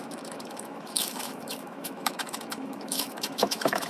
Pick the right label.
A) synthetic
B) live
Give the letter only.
A